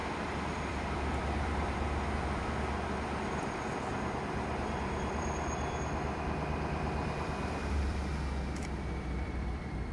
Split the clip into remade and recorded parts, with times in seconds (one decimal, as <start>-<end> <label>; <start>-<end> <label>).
0.0-8.1 remade; 8.1-8.6 recorded; 8.6-9.9 remade

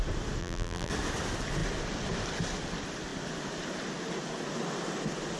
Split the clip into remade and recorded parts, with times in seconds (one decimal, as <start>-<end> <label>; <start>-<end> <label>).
0.0-0.4 recorded; 0.4-0.9 remade; 0.9-5.4 recorded

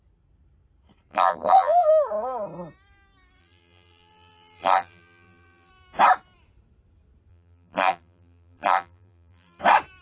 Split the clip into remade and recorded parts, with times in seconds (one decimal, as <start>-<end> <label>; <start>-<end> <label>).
0.0-1.1 recorded; 1.1-1.9 remade; 1.9-3.4 recorded; 3.4-5.7 remade; 5.7-7.3 recorded; 7.3-9.6 remade; 9.6-10.0 recorded